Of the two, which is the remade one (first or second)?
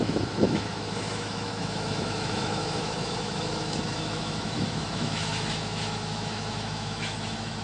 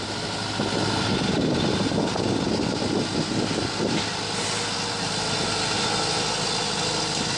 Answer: first